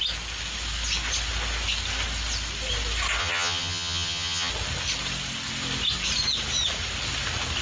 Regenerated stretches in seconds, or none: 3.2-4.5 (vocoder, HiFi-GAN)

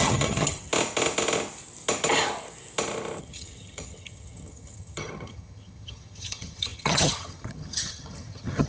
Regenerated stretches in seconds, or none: 0.0-0.7 (vocoder, HiFi-GAN); 3.2-8.7

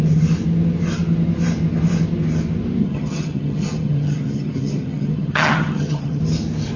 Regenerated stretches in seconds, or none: 2.8-6.2 (vocoder, HiFi-GAN)

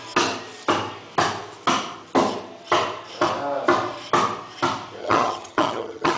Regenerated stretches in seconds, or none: 5.0-6.2 (vocoder, HiFi-GAN)

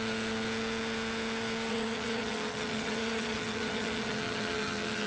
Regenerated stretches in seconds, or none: 1.7-5.1 (vocoder, HiFi-GAN)